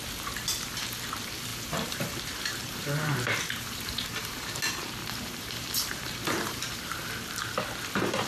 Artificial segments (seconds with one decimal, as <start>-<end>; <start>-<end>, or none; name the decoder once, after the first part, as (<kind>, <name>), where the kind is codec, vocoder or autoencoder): 1.5-4.6 (vocoder, BigVGAN v2); 5.0-7.1